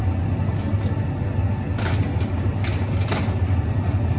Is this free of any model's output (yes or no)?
yes